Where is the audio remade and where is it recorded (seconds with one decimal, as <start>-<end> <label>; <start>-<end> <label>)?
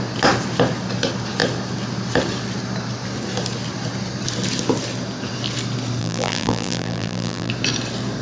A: 0.0-6.0 recorded; 6.0-7.5 remade; 7.5-8.2 recorded